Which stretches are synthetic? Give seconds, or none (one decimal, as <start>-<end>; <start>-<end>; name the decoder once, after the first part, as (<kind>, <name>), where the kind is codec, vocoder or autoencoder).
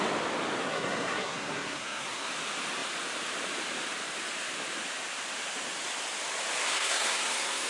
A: 0.6-2.3 (codec, SNAC); 6.7-7.7